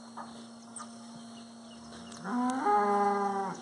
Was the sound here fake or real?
real